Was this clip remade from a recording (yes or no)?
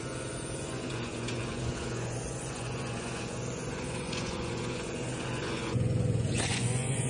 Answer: yes